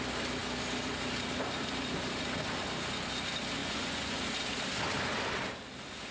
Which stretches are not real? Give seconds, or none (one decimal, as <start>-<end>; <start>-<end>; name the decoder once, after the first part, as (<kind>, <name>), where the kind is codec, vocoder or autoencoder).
3.6-4.2 (vocoder, Vocos)